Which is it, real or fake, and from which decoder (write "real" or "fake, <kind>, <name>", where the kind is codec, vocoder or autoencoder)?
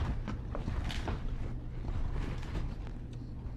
real